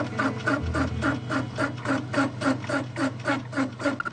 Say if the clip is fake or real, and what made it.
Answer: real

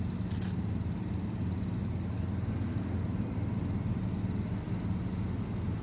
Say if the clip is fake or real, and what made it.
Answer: real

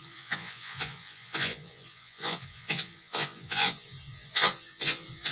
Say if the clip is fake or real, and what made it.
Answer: fake, vocoder, Vocos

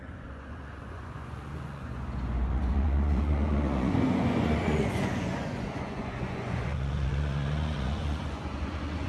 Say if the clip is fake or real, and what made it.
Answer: fake, vocoder, Vocos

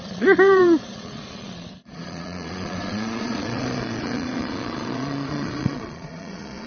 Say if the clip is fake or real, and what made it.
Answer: fake, vocoder, Vocos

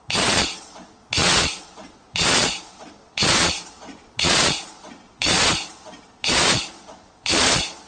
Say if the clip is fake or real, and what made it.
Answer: fake, vocoder, Vocos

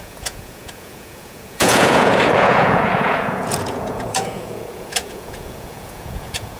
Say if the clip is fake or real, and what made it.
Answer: fake, vocoder, Vocos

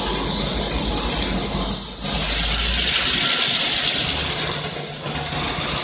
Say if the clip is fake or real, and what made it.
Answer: real